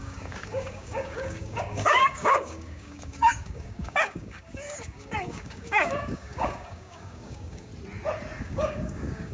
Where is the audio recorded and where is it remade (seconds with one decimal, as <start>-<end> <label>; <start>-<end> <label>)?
0.0-7.7 remade; 7.7-8.4 recorded; 8.4-9.3 remade